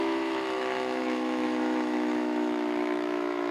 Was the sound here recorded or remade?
remade